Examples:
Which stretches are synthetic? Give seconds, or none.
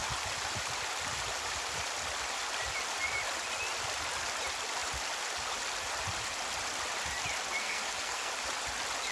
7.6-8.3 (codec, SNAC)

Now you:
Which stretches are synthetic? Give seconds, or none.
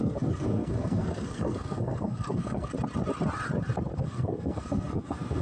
0.0-2.7 (codec, SNAC); 4.0-5.4